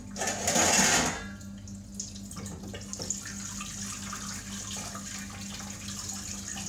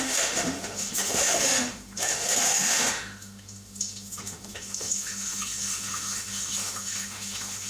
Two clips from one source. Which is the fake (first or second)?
second